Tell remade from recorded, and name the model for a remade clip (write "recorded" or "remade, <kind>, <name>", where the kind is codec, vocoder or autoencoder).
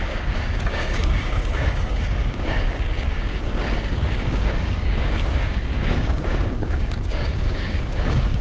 remade, codec, DAC